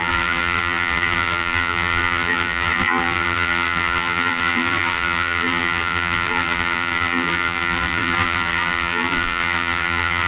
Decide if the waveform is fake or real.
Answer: fake